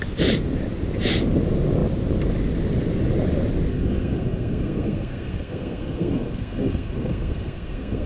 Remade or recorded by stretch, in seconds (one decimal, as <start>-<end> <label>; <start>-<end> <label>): 0.0-3.7 recorded; 3.7-8.1 remade